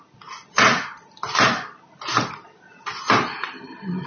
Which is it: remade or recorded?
recorded